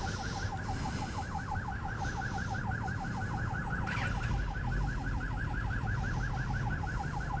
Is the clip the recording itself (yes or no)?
yes